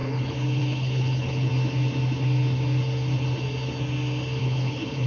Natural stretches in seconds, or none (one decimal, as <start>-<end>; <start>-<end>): 1.5-4.4